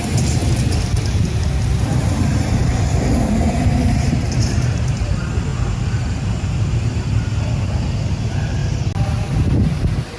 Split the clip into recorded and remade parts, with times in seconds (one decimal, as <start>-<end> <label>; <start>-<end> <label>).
0.0-0.4 remade; 0.4-1.4 recorded; 1.4-5.5 remade; 5.5-7.6 recorded; 7.6-8.6 remade; 8.6-10.2 recorded